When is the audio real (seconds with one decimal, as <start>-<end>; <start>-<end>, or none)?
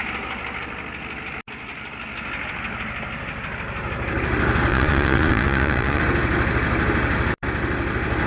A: 0.0-4.7; 6.0-8.3